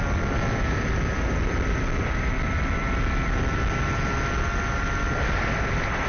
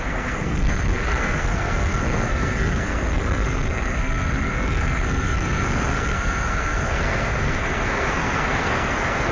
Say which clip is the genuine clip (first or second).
first